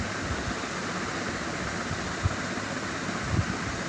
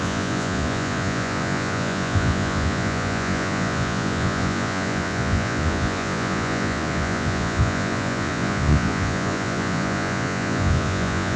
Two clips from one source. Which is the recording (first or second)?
first